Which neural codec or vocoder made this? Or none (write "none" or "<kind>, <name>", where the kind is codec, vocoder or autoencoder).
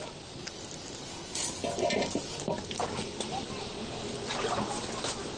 none